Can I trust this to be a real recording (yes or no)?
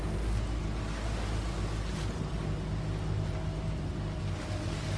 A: yes